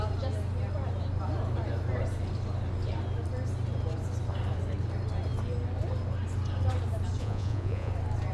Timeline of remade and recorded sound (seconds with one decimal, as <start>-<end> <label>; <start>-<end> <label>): 0.0-7.2 recorded; 7.2-7.9 remade; 7.9-8.3 recorded